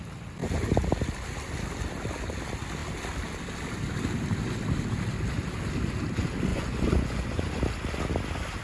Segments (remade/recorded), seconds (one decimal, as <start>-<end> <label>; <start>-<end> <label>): 0.0-6.5 recorded; 6.5-7.6 remade; 7.6-8.6 recorded